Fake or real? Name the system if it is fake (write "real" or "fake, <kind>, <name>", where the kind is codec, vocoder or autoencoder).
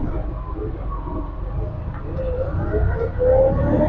real